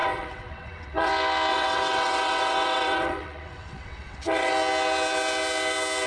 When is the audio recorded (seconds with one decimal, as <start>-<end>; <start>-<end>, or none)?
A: 1.1-1.5; 4.5-6.1